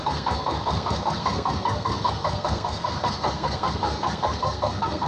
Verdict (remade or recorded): remade